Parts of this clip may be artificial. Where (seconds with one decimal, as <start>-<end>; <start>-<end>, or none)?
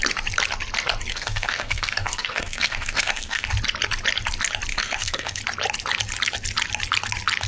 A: 1.1-3.5; 4.7-5.4